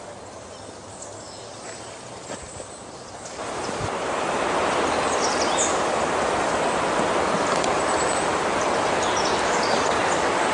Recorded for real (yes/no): yes